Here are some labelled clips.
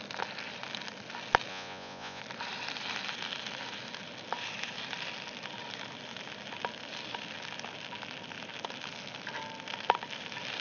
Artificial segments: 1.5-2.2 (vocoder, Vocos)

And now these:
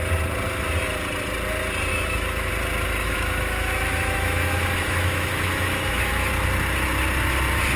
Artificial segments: 1.9-2.5 (autoencoder, DAC-VAE); 3.0-6.3

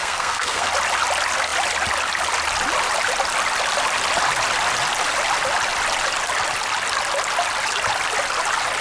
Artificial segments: 0.0-0.7 (codec, SNAC)